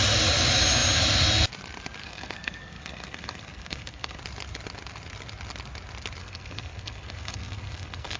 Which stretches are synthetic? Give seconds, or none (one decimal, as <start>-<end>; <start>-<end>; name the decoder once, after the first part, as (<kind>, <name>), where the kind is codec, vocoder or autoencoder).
2.0-4.2 (codec, SNAC); 6.2-8.2